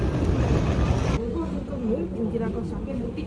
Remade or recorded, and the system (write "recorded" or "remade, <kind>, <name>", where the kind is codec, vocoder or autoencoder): recorded